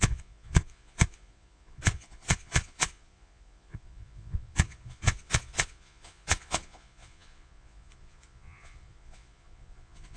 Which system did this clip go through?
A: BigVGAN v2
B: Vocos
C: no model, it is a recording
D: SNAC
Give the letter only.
B